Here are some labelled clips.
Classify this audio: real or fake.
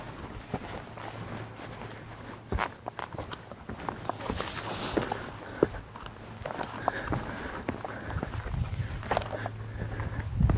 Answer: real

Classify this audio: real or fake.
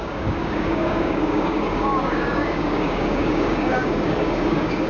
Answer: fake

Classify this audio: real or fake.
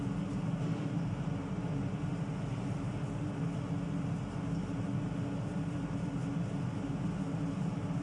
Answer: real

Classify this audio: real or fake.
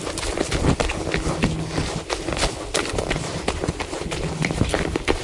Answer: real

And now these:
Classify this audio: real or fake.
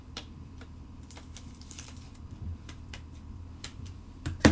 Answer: fake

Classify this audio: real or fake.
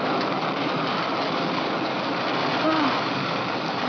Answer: real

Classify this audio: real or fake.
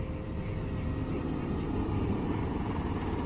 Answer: fake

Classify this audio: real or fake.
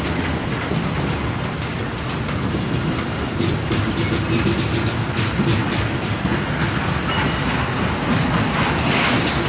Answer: real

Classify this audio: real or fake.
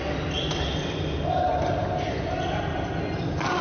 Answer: real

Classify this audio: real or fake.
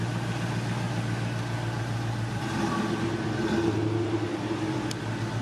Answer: real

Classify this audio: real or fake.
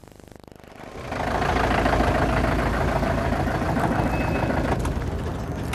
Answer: real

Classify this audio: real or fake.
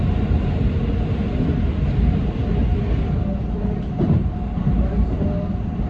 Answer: real